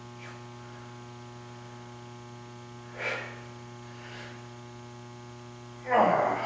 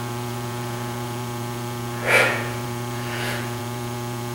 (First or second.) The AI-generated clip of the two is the second